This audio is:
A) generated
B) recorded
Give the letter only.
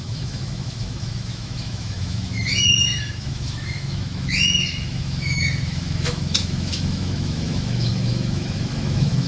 A